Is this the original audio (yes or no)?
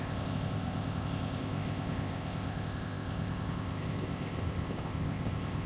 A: no